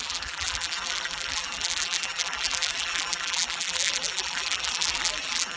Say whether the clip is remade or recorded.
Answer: remade